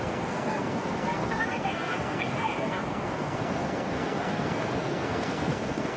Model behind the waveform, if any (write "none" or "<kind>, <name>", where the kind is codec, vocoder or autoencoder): codec, SNAC